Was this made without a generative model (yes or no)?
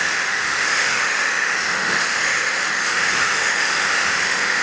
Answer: no